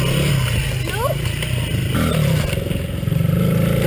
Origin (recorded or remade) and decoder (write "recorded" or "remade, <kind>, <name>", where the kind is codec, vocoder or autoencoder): recorded